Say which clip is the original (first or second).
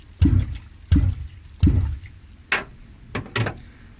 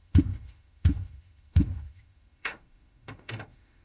first